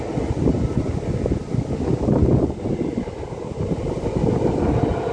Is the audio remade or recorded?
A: recorded